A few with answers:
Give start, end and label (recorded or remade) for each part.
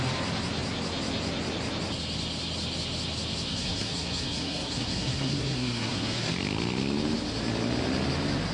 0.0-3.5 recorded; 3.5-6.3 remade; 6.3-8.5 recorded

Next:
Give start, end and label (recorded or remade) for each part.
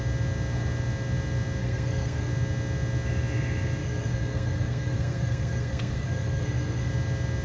0.0-1.6 recorded; 1.6-2.3 remade; 2.3-3.8 recorded; 3.8-6.9 remade; 6.9-7.4 recorded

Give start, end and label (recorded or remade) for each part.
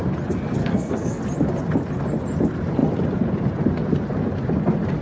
0.0-0.6 recorded; 0.6-1.2 remade; 1.2-5.0 recorded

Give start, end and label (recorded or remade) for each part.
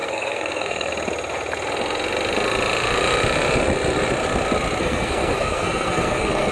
0.0-0.9 remade; 0.9-4.8 recorded; 4.8-6.5 remade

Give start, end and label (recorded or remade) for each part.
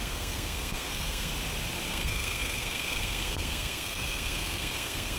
0.0-1.3 remade; 1.3-1.9 recorded; 1.9-5.2 remade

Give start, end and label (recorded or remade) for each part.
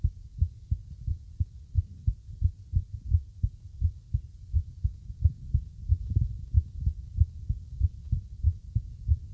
0.0-9.3 recorded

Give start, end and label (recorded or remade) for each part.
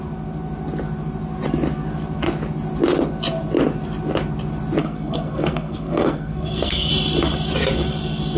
0.0-4.8 recorded; 4.8-6.9 remade; 6.9-8.4 recorded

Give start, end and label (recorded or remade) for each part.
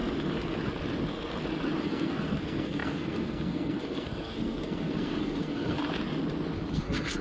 0.0-1.8 recorded; 1.8-5.8 remade; 5.8-6.7 recorded; 6.7-7.2 remade